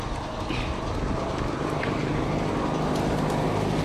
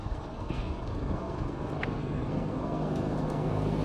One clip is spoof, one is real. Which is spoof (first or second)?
second